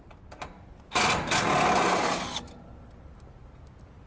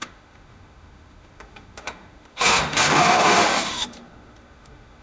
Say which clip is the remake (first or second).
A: second